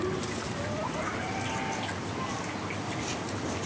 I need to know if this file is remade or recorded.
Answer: recorded